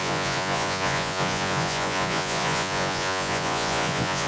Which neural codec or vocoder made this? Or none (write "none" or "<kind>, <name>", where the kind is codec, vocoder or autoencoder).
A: vocoder, Vocos